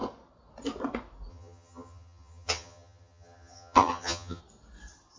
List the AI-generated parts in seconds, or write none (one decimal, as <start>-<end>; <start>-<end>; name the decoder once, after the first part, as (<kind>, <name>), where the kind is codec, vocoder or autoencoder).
1.3-4.4 (vocoder, HiFi-GAN)